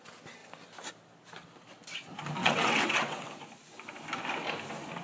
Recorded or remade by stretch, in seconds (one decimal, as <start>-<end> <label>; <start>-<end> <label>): 0.0-2.4 recorded; 2.4-3.3 remade; 3.3-5.0 recorded